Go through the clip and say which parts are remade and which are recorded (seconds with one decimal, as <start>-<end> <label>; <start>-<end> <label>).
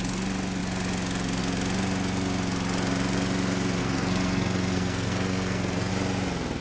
0.0-3.8 recorded; 3.8-5.9 remade; 5.9-6.6 recorded